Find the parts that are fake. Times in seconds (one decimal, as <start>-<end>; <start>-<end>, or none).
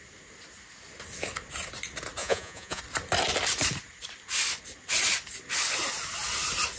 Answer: 2.2-2.8